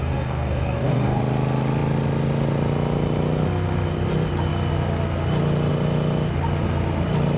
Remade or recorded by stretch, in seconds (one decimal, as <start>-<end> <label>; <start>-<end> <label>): 0.0-1.2 remade; 1.2-7.4 recorded